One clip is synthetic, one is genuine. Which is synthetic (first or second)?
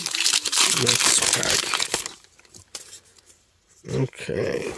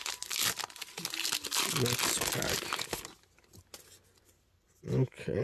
first